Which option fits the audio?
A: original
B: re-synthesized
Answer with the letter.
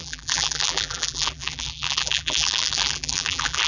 B